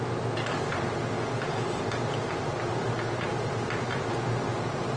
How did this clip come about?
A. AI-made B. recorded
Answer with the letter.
B